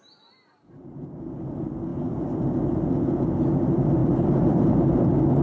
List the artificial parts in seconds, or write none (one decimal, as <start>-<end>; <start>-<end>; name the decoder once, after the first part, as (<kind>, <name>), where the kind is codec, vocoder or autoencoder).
0.8-1.3 (vocoder, BigVGAN v2); 4.0-5.0